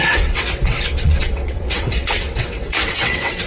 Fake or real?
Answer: fake